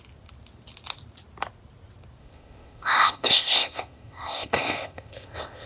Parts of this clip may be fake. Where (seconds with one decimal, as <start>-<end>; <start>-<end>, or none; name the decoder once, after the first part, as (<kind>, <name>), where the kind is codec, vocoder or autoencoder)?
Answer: 2.2-5.7 (codec, ZipCodec)

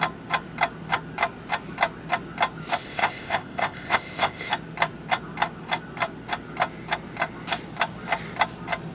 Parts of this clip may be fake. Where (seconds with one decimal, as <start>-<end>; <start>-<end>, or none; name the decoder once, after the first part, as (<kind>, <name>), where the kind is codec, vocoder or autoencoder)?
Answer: 2.8-4.5 (codec, ZipCodec)